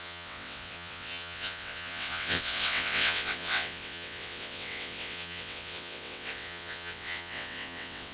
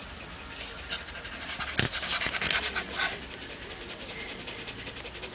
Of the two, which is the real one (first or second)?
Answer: second